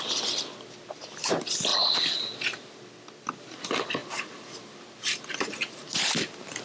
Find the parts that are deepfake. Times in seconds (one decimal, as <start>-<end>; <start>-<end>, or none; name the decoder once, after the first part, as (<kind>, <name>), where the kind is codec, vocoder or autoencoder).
4.0-5.9 (vocoder, BigVGAN v2)